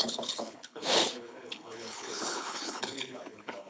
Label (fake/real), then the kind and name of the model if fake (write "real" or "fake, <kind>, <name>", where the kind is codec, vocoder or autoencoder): fake, codec, HILCodec